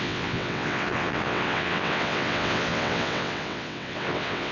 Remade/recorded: remade